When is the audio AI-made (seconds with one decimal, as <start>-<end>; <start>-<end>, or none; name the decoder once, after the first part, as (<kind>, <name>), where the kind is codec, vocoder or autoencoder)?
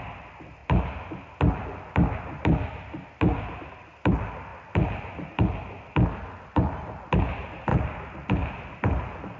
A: none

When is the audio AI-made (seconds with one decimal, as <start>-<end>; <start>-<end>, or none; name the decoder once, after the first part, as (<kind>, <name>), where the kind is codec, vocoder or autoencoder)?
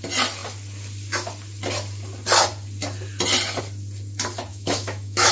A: 4.5-5.3 (autoencoder, DAC-VAE)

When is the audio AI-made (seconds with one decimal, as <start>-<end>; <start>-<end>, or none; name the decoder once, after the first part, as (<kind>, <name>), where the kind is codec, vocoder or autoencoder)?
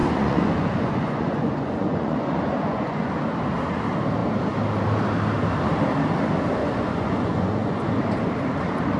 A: 0.0-3.1 (vocoder, Vocos); 6.6-7.9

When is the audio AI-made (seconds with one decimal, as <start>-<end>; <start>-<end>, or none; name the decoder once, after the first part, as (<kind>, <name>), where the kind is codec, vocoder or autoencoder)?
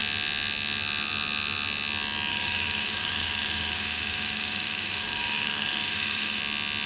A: 2.3-6.4 (autoencoder, DAC-VAE)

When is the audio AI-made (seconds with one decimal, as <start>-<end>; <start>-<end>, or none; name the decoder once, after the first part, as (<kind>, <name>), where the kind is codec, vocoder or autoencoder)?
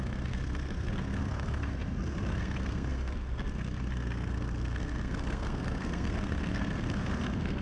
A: 0.0-7.6 (codec, SNAC)